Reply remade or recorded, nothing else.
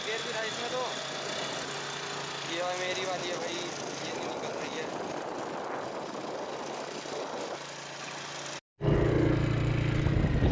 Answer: recorded